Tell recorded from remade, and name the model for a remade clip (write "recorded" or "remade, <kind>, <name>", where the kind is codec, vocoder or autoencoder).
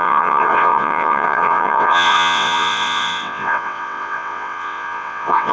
remade, vocoder, WaveNeXt